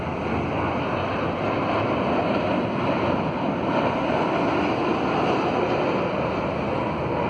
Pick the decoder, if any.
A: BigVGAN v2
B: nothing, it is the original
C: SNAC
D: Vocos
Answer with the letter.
B